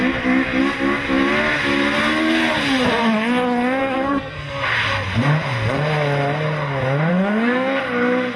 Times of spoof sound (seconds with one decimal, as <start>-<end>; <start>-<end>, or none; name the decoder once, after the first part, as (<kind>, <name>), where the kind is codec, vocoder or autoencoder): 3.8-4.6 (codec, SNAC); 7.1-7.8